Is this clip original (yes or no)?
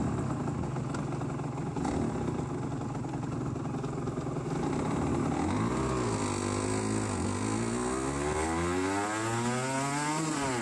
yes